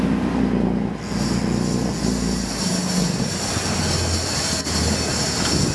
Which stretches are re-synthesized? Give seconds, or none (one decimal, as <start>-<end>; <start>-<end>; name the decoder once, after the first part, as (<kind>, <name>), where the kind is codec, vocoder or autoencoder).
none

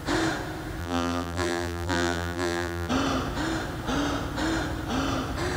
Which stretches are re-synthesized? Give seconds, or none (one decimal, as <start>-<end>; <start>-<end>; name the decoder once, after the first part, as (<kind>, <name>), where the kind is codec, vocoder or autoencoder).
0.8-2.9 (vocoder, BigVGAN v2)

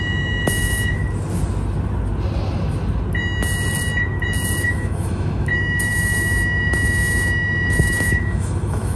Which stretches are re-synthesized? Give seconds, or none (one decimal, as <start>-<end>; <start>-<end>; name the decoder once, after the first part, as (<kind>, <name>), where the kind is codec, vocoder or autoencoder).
0.0-1.0 (autoencoder, DAC-VAE); 4.6-9.0

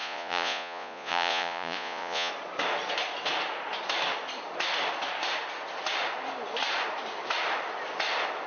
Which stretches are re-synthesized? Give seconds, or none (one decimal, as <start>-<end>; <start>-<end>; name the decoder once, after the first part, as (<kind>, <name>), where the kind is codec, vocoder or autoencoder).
0.0-2.3 (vocoder, Vocos)

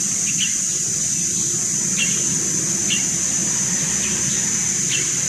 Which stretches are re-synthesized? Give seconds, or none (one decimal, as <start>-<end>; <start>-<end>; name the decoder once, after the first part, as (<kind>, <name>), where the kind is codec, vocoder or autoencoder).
none

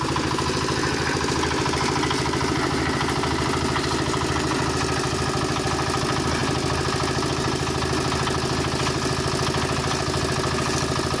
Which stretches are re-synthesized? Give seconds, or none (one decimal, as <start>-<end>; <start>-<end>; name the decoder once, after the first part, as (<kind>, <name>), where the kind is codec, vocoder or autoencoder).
none